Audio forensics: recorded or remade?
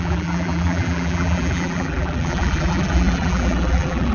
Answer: remade